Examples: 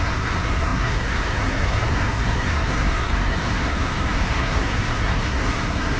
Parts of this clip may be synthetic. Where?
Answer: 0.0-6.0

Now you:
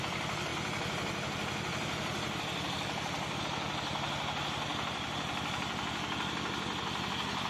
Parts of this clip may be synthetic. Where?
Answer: none

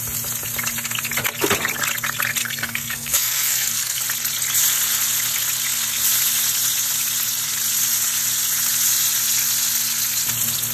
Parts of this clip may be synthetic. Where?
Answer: 2.4-4.0

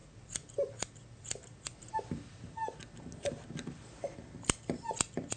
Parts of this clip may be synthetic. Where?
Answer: none

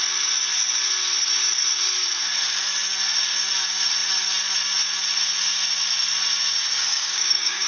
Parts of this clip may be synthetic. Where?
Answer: 6.9-7.7

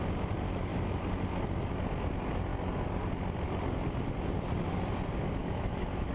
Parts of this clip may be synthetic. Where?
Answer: 5.4-6.1

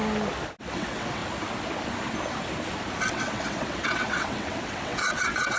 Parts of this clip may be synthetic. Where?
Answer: 0.6-1.2; 3.1-5.6

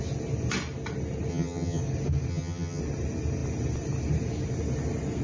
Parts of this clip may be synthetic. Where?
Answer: 1.3-1.8; 2.3-2.8